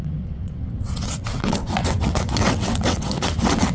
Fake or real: fake